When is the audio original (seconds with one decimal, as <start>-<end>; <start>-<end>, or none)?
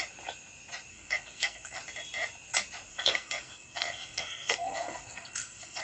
0.0-0.9; 1.8-2.9